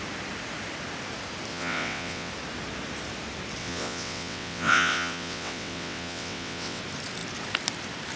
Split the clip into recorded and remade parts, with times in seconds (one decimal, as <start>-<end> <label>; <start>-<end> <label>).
0.0-1.5 recorded; 1.5-2.3 remade; 2.3-3.6 recorded; 3.6-6.8 remade; 6.8-8.2 recorded